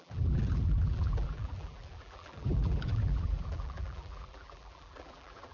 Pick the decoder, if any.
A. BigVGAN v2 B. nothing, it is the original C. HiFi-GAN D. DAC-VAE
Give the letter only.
A